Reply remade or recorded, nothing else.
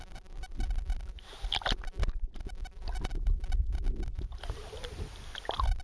recorded